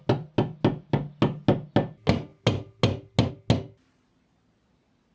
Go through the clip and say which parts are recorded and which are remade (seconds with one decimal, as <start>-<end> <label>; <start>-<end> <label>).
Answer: 0.0-5.1 recorded